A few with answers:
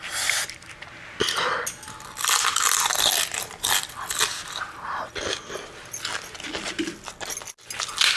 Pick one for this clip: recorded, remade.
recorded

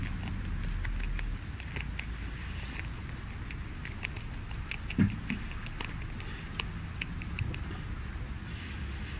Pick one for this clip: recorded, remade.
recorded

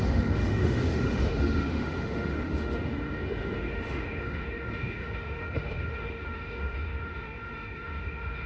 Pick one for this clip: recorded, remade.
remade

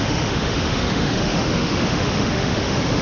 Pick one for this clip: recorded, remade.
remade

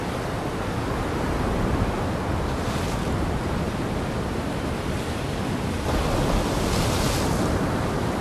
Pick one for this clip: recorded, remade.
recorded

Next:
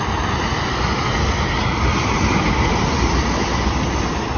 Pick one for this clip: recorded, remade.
recorded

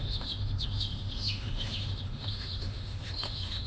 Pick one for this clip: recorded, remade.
remade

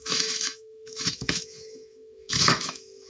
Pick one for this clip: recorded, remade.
remade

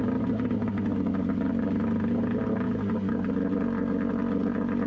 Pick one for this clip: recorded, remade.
recorded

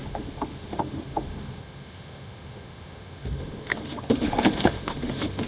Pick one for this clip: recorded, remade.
remade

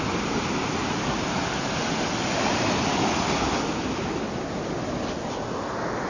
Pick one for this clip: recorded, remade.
recorded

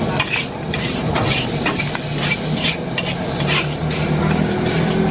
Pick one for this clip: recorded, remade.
recorded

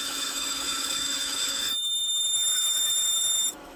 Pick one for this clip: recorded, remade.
remade